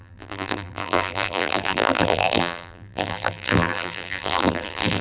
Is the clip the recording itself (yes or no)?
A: no